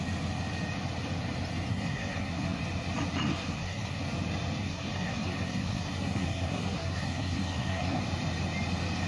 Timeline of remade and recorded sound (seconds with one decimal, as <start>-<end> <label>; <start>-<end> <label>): 0.0-1.7 recorded; 1.7-2.6 remade; 2.6-3.3 recorded; 3.3-4.0 remade; 4.0-4.6 recorded; 4.6-8.0 remade; 8.0-9.1 recorded